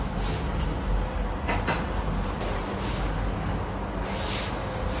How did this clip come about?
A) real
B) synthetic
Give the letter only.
A